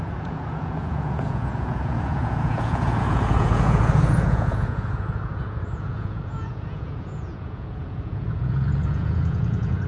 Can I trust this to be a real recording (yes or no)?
no